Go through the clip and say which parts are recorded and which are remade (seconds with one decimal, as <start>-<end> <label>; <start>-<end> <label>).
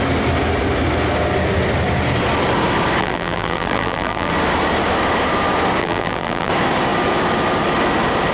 0.0-3.0 recorded; 3.0-4.3 remade; 4.3-5.8 recorded; 5.8-6.5 remade; 6.5-8.3 recorded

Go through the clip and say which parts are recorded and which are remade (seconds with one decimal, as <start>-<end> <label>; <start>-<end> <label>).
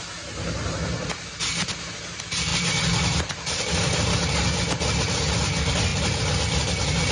0.0-2.5 recorded; 2.5-3.6 remade; 3.6-5.9 recorded; 5.9-6.6 remade; 6.6-7.1 recorded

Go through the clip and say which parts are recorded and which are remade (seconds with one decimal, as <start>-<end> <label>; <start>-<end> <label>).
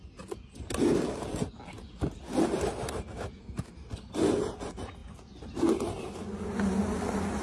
0.0-7.4 recorded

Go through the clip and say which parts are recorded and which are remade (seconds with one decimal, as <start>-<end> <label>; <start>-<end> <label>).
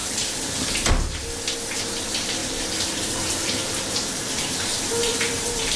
0.0-0.9 remade; 0.9-2.4 recorded; 2.4-4.3 remade; 4.3-5.0 recorded; 5.0-5.8 remade